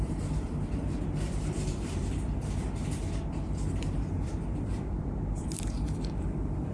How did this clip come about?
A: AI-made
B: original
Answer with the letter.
A